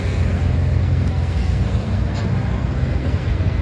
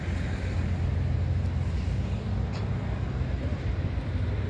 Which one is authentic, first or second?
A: second